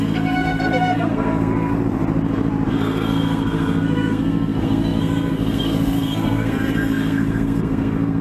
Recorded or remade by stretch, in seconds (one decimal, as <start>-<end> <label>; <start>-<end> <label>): 0.0-1.7 remade; 1.7-2.7 recorded; 2.7-8.2 remade